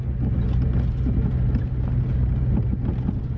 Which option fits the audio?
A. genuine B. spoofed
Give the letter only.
A